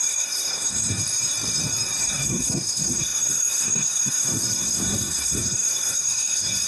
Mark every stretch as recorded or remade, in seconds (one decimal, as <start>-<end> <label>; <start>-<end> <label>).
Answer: 0.0-1.0 remade; 1.0-2.0 recorded; 2.0-6.7 remade